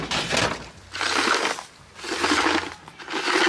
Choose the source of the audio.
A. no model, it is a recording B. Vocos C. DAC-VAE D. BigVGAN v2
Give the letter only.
A